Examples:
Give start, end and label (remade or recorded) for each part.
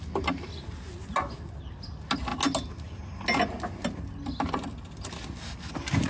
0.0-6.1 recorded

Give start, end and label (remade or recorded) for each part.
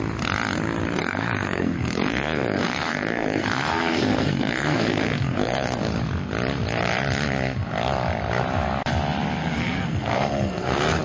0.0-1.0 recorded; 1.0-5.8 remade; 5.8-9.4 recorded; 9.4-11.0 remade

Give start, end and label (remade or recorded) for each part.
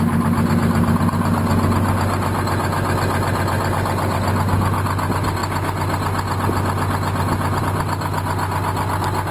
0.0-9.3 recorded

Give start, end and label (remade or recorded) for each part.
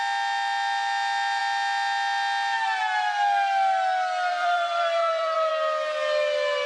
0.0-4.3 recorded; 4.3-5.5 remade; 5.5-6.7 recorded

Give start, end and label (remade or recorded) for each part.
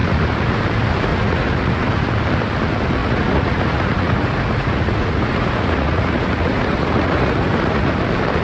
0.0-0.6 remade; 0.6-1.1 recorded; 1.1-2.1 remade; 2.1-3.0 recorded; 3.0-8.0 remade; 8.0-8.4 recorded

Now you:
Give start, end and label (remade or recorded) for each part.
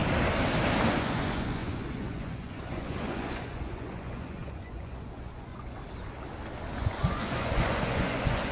0.0-0.9 recorded; 0.9-5.8 remade; 5.8-6.8 recorded; 6.8-8.5 remade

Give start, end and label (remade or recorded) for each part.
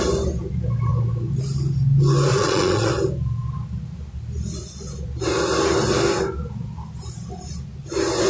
0.0-2.3 recorded; 2.3-2.9 remade; 2.9-8.3 recorded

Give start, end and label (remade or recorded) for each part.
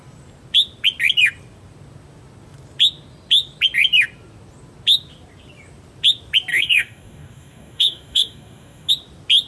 0.0-6.5 recorded; 6.5-8.9 remade; 8.9-9.5 recorded